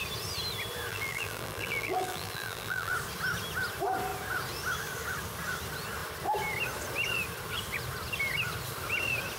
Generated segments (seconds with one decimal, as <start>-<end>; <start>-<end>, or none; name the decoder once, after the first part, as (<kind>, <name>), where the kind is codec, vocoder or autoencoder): 0.9-2.9 (vocoder, BigVGAN v2)